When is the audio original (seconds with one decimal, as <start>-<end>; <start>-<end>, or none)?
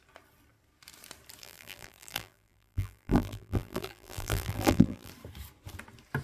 0.0-1.4; 5.1-6.2